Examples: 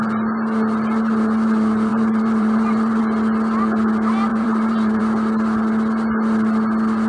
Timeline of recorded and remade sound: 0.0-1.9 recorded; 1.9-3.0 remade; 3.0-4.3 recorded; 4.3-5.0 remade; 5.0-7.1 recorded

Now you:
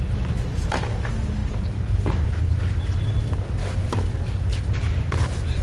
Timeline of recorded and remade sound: 0.0-1.4 recorded; 1.4-2.8 remade; 2.8-3.6 recorded; 3.6-4.1 remade; 4.1-4.5 recorded; 4.5-5.6 remade

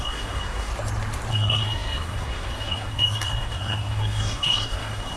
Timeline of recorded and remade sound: 0.0-0.7 remade; 0.7-1.3 recorded; 1.3-5.2 remade